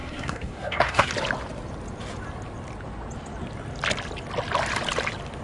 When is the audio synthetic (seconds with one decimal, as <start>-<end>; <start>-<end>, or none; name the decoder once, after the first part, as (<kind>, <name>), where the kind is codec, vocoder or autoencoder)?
0.0-1.1 (codec, SNAC)